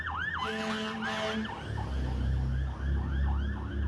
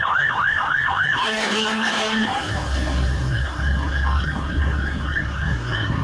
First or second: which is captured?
first